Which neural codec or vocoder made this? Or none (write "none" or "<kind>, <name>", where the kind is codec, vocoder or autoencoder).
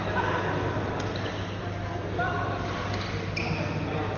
none